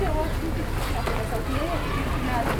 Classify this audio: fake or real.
real